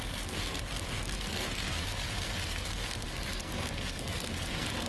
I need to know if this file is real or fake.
fake